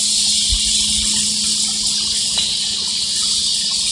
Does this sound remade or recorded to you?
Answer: recorded